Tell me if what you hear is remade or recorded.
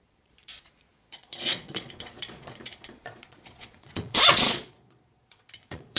remade